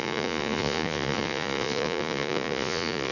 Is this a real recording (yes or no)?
no